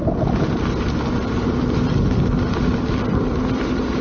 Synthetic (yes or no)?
no